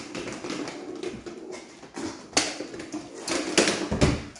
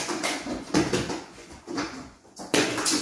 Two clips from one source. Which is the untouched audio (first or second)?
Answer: first